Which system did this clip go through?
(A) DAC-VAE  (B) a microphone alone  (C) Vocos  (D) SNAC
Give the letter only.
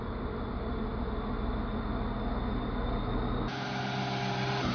B